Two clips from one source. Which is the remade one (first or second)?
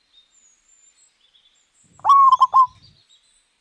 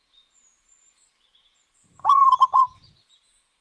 second